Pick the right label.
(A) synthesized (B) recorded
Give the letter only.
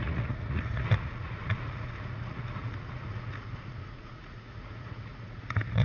A